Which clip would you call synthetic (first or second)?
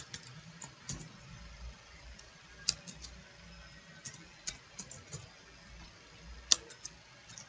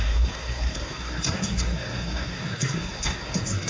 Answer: second